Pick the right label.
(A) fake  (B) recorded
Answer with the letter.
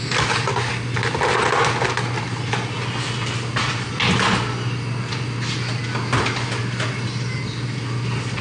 B